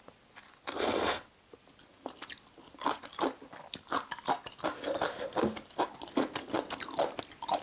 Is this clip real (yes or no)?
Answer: yes